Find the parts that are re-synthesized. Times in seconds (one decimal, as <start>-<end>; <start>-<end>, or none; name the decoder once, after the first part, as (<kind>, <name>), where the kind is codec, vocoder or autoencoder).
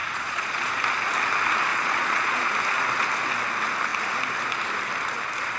0.0-0.7 (vocoder, Vocos); 1.7-2.5